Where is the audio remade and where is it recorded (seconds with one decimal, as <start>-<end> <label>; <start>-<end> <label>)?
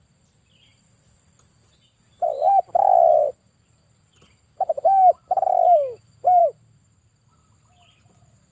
0.0-8.5 recorded